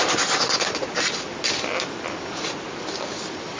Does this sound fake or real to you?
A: real